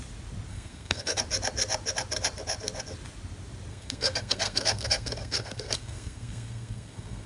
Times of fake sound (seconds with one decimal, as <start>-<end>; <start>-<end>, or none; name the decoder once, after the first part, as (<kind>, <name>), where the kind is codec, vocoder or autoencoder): 0.5-1.2 (codec, SNAC); 3.7-7.3